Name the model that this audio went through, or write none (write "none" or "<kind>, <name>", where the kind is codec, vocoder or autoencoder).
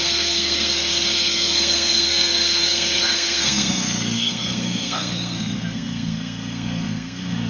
codec, SNAC